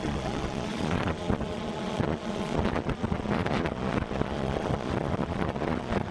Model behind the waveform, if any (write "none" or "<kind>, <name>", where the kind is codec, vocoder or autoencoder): vocoder, Vocos